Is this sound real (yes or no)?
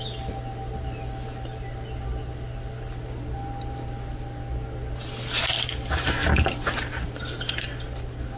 yes